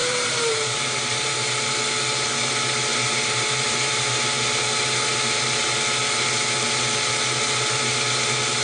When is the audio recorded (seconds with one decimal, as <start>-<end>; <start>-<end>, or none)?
1.7-2.9; 4.2-8.6